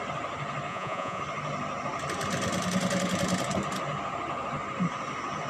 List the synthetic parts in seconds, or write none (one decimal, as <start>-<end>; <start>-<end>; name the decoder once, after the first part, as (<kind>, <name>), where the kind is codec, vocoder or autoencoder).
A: 0.7-1.2 (vocoder, Vocos)